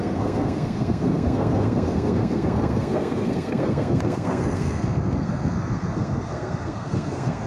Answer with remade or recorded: remade